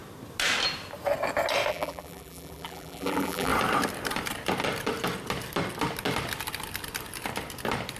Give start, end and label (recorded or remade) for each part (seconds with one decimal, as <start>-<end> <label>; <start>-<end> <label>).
0.0-1.7 recorded; 1.7-3.5 remade; 3.5-8.0 recorded